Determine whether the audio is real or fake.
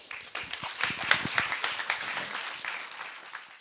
real